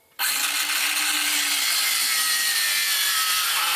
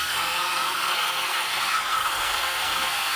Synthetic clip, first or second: second